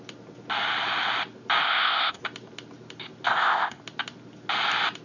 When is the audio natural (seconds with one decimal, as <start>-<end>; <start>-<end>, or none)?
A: 0.0-1.6; 2.2-3.3; 3.8-5.0